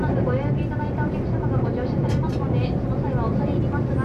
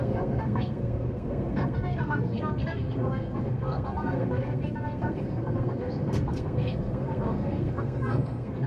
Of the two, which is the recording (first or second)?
first